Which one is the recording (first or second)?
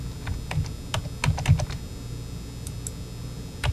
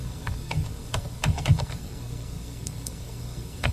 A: first